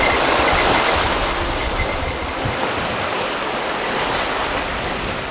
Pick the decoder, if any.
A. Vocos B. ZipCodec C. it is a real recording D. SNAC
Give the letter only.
C